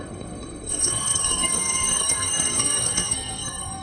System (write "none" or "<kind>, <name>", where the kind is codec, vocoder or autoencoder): codec, SNAC